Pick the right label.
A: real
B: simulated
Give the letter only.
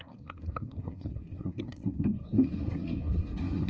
B